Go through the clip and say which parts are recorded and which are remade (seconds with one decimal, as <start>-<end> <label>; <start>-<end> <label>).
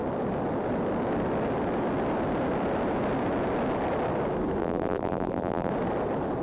0.0-4.6 recorded; 4.6-5.7 remade; 5.7-6.4 recorded